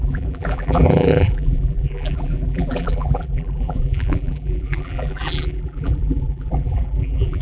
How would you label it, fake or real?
fake